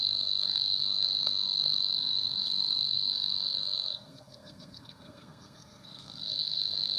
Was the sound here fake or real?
fake